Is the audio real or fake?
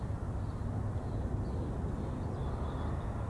real